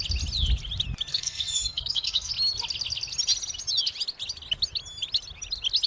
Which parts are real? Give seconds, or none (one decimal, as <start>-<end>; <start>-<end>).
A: 0.0-1.1; 2.3-5.9